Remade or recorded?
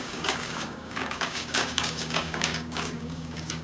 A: remade